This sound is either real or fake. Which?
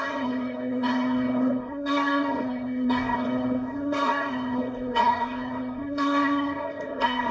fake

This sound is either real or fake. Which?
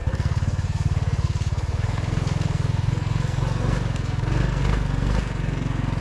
fake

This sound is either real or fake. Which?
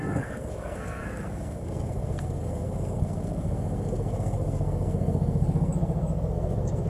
fake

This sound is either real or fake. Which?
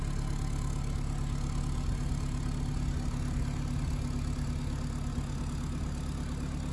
real